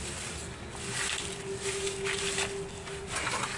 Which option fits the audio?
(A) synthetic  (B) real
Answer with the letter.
B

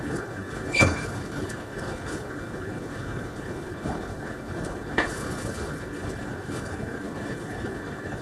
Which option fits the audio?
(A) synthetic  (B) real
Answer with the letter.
A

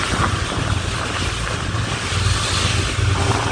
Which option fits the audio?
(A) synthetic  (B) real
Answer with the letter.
B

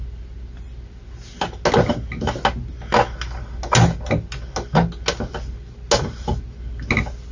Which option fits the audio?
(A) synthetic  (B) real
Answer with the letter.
B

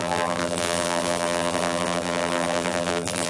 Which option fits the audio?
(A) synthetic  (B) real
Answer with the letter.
A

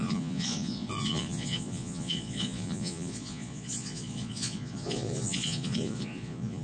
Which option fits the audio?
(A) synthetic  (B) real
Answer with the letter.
A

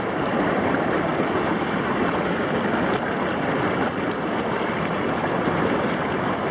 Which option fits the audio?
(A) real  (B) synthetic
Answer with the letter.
A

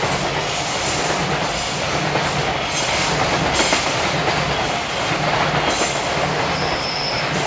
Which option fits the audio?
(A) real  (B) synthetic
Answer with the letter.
A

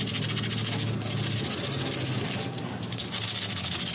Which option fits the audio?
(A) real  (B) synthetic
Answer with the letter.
A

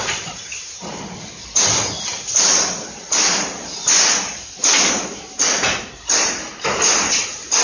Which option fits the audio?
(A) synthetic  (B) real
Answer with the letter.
B